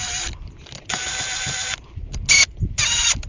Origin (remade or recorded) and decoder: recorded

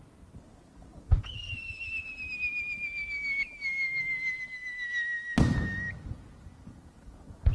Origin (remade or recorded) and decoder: recorded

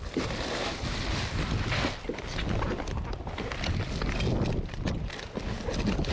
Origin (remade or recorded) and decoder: recorded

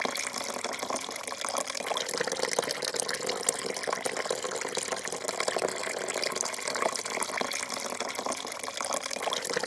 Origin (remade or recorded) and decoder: recorded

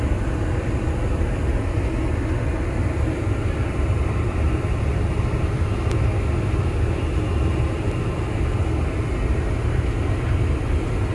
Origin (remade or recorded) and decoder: recorded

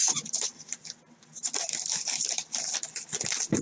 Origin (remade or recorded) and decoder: recorded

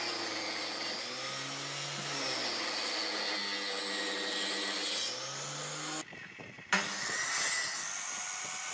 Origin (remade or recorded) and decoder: recorded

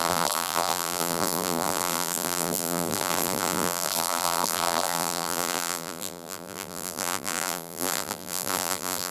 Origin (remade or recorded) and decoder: remade, vocoder, BigVGAN v2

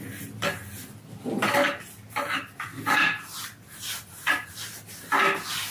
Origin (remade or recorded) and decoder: recorded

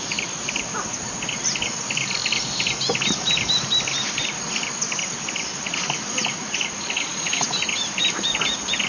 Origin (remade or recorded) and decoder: recorded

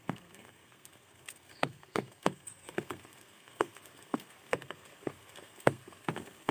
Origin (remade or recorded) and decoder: remade, codec, SNAC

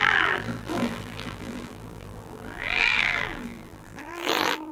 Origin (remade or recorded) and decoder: remade, vocoder, BigVGAN v2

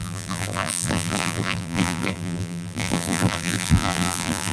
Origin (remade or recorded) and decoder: remade, vocoder, BigVGAN v2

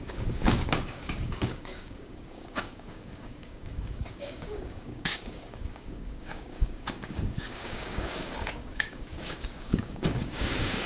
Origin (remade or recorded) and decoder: remade, codec, DAC